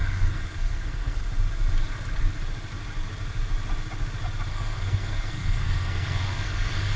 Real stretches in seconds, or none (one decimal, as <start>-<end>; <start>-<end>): 1.2-4.5